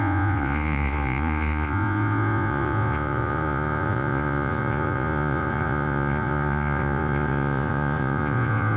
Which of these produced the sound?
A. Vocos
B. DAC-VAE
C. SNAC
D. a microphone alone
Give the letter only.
A